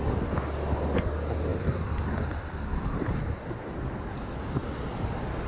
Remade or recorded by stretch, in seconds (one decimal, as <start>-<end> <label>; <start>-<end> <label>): 0.0-1.5 recorded; 1.5-3.6 remade; 3.6-5.5 recorded